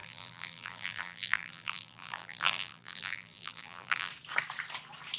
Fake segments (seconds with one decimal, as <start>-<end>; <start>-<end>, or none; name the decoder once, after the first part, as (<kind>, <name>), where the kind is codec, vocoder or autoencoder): 0.0-4.1 (vocoder, BigVGAN v2)